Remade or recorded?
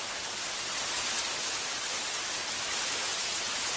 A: recorded